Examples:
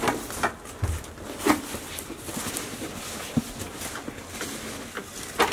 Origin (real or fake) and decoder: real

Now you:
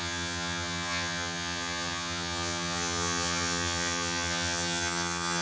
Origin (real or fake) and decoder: fake, vocoder, HiFi-GAN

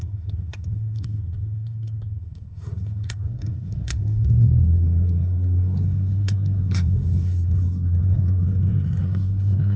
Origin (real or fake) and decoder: fake, codec, SNAC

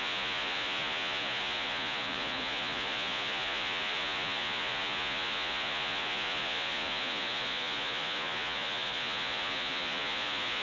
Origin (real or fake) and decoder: fake, vocoder, Vocos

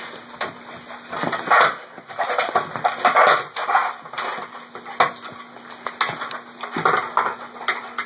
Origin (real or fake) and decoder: real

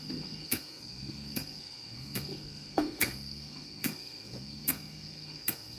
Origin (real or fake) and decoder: fake, codec, SNAC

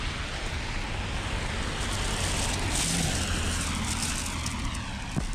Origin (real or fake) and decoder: real